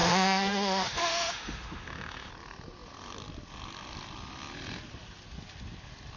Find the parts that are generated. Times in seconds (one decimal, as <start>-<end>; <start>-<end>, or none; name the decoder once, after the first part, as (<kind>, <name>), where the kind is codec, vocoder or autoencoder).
0.0-2.3 (autoencoder, DAC-VAE)